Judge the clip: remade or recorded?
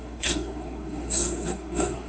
remade